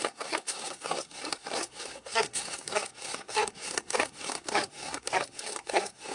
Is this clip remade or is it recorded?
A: remade